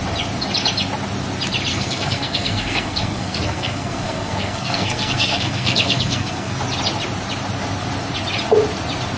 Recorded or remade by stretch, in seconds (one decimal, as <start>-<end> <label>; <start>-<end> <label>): 0.0-1.7 recorded; 1.7-6.6 remade; 6.6-9.2 recorded